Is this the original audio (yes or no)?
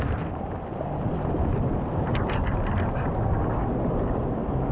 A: yes